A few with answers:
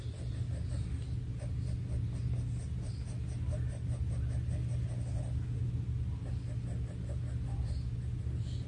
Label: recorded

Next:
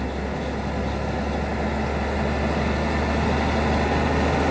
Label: recorded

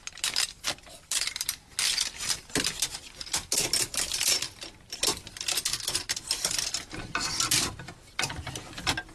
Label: recorded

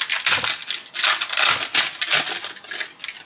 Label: recorded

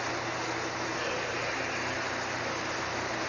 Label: recorded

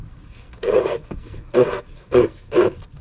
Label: remade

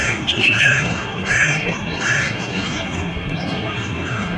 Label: remade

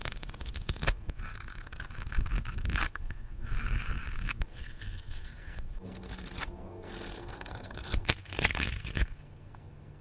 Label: remade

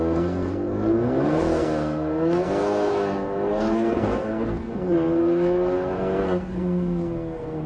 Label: remade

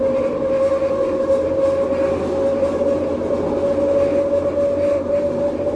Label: recorded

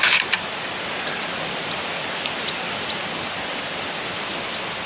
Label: recorded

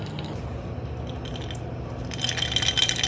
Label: recorded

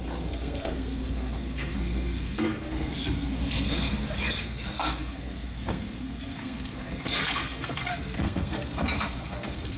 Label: remade